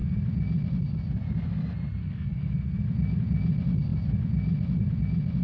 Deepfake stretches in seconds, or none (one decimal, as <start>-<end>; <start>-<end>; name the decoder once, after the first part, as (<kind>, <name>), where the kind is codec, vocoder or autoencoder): 2.0-2.6 (codec, SNAC)